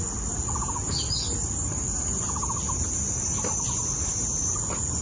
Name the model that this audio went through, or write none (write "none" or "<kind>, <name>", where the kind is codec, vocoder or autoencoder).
none